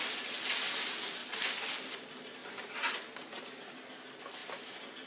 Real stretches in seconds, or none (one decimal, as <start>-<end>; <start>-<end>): 0.0-5.1